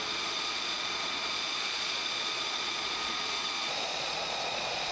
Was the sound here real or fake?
fake